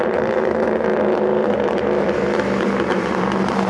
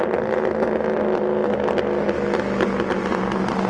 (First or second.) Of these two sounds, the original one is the second